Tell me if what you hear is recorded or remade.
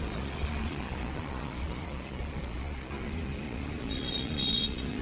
remade